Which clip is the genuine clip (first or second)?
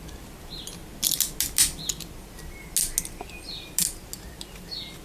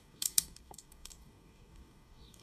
first